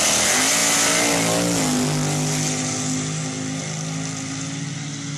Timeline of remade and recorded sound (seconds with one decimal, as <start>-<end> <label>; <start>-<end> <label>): 0.0-5.2 recorded

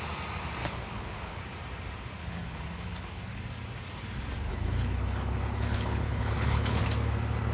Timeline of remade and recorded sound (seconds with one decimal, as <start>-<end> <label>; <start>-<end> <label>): 0.0-0.6 recorded; 0.6-1.4 remade; 1.4-2.2 recorded; 2.2-3.4 remade; 3.4-4.5 recorded; 4.5-6.8 remade; 6.8-7.5 recorded

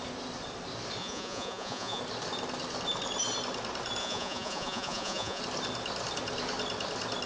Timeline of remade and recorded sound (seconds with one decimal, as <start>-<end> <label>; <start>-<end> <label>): 0.0-1.0 recorded; 1.0-2.0 remade; 2.0-4.0 recorded; 4.0-5.4 remade; 5.4-7.3 recorded

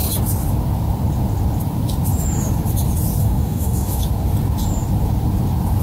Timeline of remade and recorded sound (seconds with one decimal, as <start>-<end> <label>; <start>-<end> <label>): 0.0-3.2 recorded; 3.2-4.0 remade; 4.0-5.8 recorded

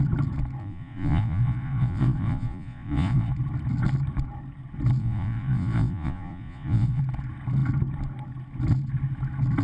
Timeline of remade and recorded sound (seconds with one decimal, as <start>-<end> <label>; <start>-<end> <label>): 0.0-0.6 recorded; 0.6-3.3 remade; 3.3-5.0 recorded; 5.0-7.0 remade; 7.0-9.6 recorded

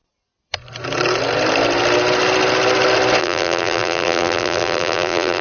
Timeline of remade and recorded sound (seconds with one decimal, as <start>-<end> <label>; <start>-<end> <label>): 0.0-3.2 recorded; 3.2-5.4 remade